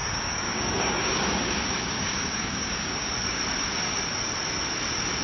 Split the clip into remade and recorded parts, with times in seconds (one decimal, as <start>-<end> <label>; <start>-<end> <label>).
0.0-3.1 remade; 3.1-5.2 recorded